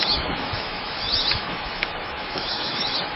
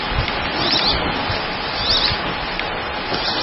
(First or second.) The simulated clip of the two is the first